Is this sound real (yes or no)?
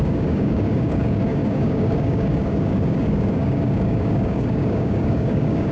no